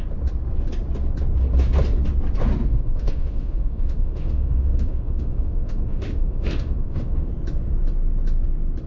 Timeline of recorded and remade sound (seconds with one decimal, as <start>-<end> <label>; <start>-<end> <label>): 0.0-2.7 recorded; 2.7-7.3 remade; 7.3-8.9 recorded

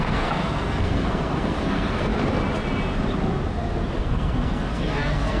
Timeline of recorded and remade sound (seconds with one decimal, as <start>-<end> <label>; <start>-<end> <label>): 0.0-2.1 remade; 2.1-4.0 recorded; 4.0-5.4 remade

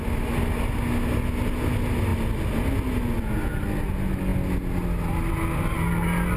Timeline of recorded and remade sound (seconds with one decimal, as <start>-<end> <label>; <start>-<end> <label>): 0.0-6.4 recorded

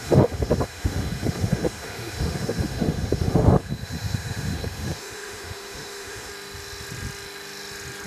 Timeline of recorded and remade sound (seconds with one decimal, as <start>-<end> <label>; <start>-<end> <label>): 0.0-6.3 remade; 6.3-8.1 recorded

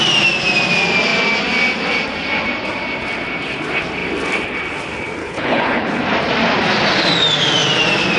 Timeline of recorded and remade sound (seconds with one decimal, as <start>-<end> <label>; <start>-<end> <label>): 0.0-5.2 recorded; 5.2-6.0 remade; 6.0-8.2 recorded